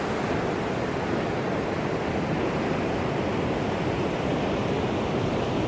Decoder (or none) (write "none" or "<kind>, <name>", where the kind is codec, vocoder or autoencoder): none